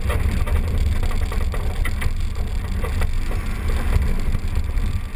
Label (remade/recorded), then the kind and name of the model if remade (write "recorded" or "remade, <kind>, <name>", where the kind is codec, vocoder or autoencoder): recorded